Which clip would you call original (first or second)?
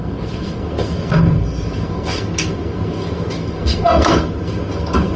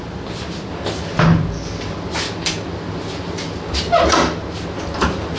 second